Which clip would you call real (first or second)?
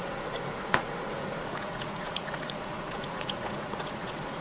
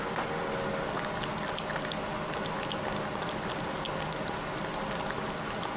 second